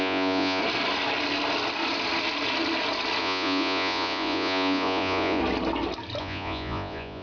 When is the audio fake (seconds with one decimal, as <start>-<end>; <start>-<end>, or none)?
0.0-0.6; 3.2-5.4; 6.2-7.2